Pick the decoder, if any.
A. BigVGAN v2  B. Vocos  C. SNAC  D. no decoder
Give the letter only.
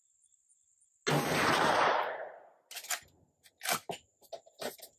D